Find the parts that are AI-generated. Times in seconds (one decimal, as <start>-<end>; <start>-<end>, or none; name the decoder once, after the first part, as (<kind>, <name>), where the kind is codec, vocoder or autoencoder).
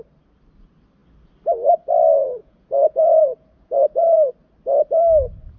2.4-4.3 (vocoder, Vocos)